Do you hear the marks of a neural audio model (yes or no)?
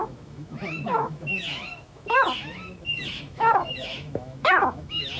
yes